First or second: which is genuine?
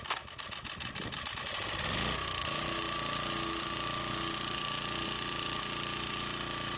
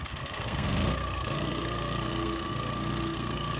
first